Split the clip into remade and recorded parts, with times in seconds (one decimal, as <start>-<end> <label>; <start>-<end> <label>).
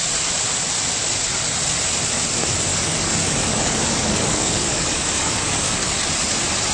0.0-2.7 recorded; 2.7-6.1 remade; 6.1-6.7 recorded